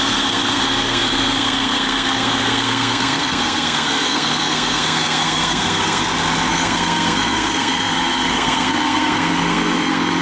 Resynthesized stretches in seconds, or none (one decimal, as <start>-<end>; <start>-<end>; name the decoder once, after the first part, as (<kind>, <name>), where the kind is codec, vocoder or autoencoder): 0.0-6.0 (codec, SNAC); 6.5-10.2

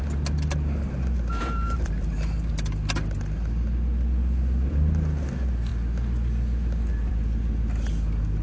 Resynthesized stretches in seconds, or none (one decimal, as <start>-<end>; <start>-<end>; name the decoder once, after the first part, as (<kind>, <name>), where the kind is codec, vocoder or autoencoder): 1.4-2.5 (vocoder, BigVGAN v2)

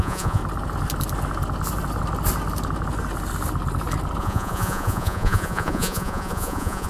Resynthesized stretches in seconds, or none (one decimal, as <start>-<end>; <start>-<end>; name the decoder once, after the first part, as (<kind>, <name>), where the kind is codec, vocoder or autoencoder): 0.0-0.4 (vocoder, Vocos); 4.2-6.9

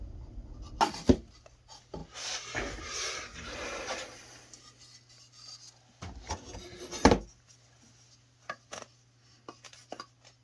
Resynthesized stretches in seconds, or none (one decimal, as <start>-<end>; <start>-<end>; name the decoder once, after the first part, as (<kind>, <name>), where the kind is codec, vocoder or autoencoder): none